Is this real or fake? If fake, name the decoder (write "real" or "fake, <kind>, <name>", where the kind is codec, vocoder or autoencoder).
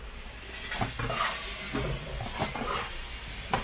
real